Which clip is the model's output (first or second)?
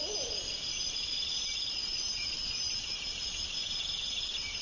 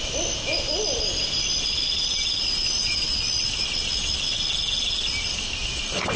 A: first